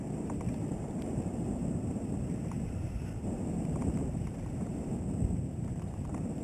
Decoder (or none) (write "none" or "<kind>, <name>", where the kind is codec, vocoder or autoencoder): vocoder, BigVGAN v2